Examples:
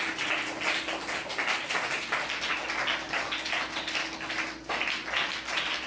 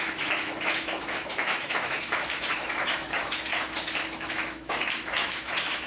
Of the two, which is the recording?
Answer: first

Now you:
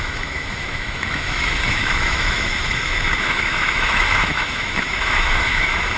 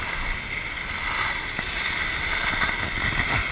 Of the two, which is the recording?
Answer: second